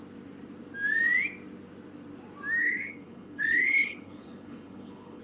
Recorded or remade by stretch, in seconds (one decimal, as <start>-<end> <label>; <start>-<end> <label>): 0.0-2.6 recorded; 2.6-5.2 remade